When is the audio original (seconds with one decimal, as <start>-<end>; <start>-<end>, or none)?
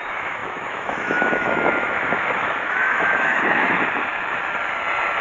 4.4-5.2